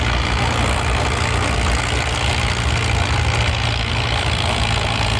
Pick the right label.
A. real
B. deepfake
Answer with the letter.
A